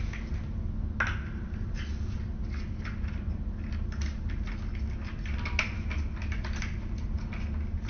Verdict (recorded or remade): recorded